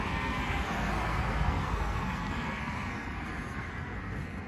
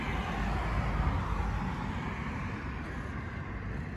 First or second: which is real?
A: second